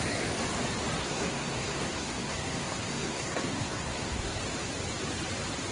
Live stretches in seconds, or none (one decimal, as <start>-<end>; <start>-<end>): 0.0-1.0; 4.4-5.7